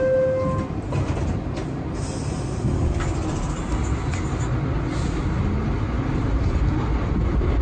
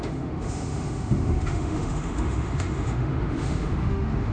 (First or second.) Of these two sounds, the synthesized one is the second